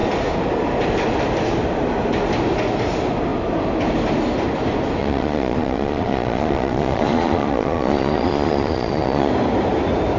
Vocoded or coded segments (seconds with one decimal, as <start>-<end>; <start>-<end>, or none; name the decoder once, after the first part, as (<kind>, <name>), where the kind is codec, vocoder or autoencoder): 5.0-9.3 (vocoder, Vocos)

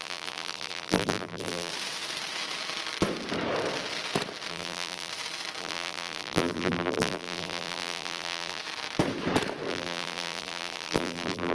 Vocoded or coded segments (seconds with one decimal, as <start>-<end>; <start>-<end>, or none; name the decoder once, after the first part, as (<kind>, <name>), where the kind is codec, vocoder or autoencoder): 0.0-1.7 (vocoder, BigVGAN v2); 4.5-5.1; 5.6-8.6; 9.7-11.5

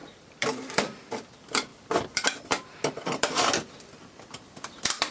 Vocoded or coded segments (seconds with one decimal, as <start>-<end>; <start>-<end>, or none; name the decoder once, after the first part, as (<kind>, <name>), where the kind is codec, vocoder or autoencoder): 1.7-5.1 (vocoder, BigVGAN v2)